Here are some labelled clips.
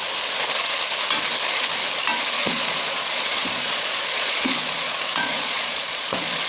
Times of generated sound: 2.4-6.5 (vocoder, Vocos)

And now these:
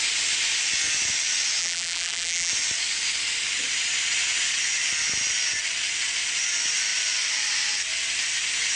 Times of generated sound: 1.6-2.5 (vocoder, BigVGAN v2)

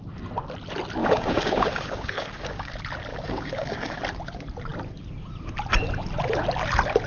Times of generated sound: 1.0-2.7 (codec, DAC); 3.1-4.0